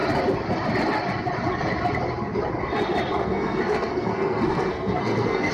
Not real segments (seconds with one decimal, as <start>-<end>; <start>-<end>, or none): 3.2-5.5